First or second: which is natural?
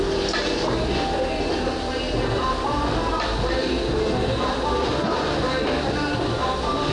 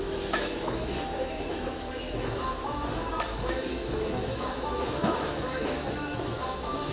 first